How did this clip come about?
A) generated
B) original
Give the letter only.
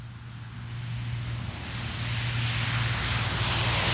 B